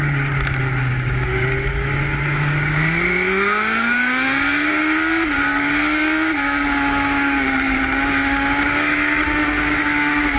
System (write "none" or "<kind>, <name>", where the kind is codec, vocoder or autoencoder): codec, DAC